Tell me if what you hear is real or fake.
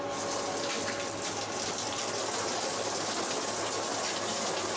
real